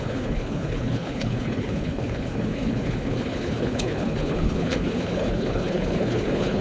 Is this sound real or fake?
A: fake